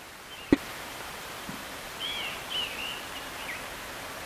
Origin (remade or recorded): recorded